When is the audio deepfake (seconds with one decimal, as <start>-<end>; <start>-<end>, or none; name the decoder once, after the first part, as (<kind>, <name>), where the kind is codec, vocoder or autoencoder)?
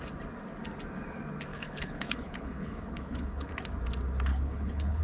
1.5-3.5 (codec, HILCodec); 4.3-5.0